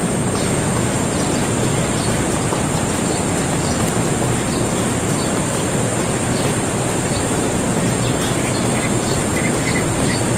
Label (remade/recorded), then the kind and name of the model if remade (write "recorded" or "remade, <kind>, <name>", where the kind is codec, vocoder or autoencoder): recorded